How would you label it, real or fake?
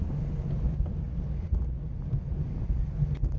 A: real